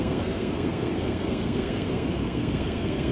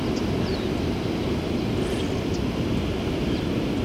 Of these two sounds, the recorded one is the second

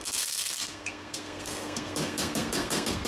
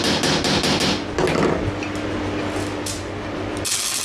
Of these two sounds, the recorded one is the second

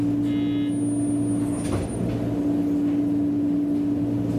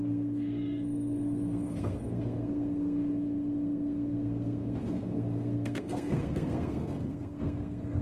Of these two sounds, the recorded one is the first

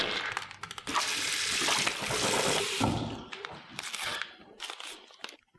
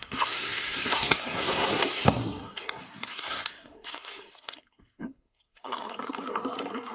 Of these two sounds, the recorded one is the first